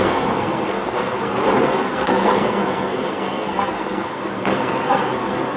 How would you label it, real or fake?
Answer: fake